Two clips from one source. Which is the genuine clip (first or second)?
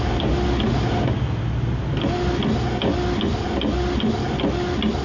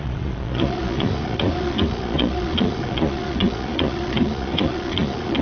first